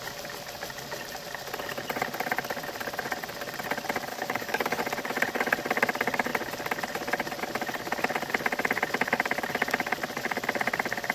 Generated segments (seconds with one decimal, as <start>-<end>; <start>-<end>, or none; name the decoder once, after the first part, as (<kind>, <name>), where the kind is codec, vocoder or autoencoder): 4.1-4.8 (codec, DAC)